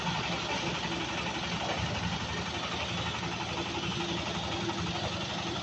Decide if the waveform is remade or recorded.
recorded